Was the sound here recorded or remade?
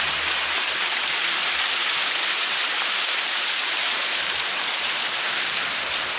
recorded